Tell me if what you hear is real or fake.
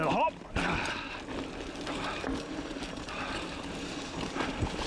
real